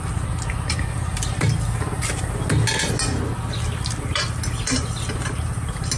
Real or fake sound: real